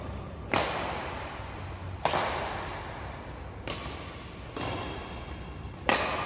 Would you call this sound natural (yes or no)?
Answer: yes